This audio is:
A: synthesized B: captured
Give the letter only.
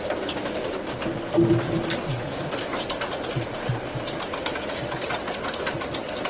B